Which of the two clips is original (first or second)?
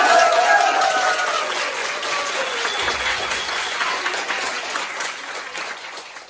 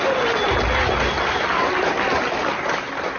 second